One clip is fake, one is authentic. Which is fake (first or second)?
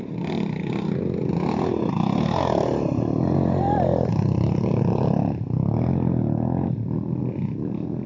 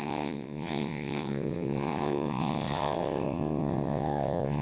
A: second